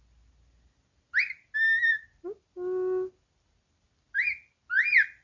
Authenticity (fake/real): real